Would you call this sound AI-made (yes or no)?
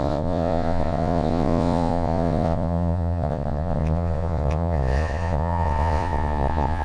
yes